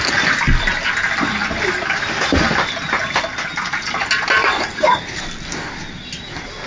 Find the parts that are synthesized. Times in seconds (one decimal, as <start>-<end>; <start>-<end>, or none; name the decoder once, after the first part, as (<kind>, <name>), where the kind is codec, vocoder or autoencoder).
none